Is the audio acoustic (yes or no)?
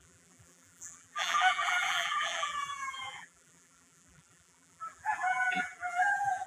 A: no